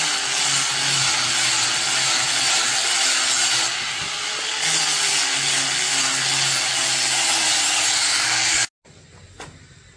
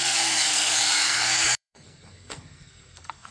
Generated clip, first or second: second